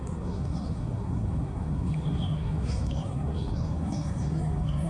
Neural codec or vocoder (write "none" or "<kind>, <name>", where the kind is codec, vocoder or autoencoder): codec, SNAC